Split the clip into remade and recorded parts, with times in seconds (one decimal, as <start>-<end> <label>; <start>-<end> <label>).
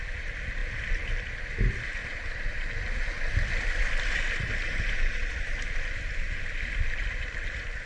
0.0-0.6 remade; 0.6-5.3 recorded; 5.3-7.9 remade